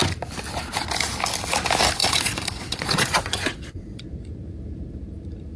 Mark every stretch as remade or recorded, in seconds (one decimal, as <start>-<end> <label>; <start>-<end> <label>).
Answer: 0.0-2.0 recorded; 2.0-4.0 remade; 4.0-5.6 recorded